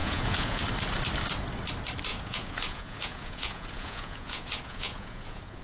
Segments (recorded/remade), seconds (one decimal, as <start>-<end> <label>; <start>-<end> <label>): 0.0-0.6 remade; 0.6-2.1 recorded; 2.1-5.6 remade